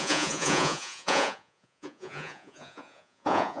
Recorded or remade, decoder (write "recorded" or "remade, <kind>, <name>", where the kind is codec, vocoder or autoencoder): remade, vocoder, Vocos